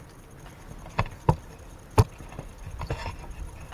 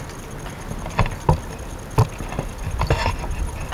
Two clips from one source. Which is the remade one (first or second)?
first